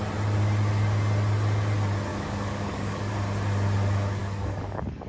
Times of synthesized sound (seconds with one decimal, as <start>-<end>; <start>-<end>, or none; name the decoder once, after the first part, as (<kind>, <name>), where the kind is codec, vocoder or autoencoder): 2.1-3.1 (codec, DAC); 4.2-5.1